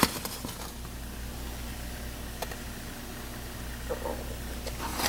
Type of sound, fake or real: real